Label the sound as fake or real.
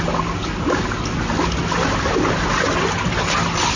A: real